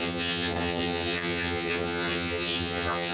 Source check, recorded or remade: remade